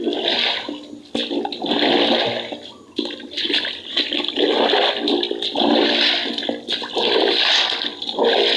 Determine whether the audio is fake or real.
real